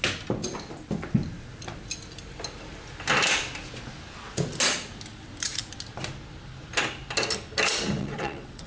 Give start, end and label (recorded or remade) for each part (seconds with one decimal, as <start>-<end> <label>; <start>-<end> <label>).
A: 0.0-8.0 recorded; 8.0-8.7 remade